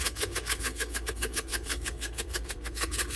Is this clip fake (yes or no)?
yes